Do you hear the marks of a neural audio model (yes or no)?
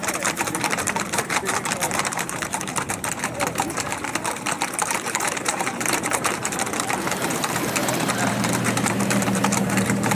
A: yes